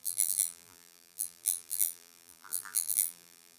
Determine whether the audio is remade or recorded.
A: remade